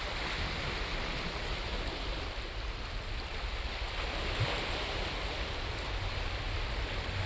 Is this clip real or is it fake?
real